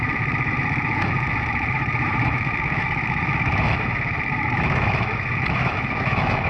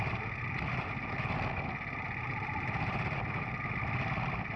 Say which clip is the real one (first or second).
second